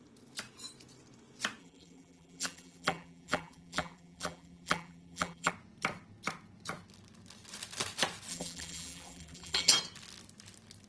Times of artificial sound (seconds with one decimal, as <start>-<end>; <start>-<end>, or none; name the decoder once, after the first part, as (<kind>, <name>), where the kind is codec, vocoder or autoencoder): 1.6-5.5 (vocoder, BigVGAN v2); 8.3-9.7